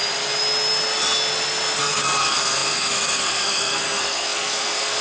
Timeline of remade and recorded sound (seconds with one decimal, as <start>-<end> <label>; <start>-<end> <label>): 0.0-1.8 recorded; 1.8-5.0 remade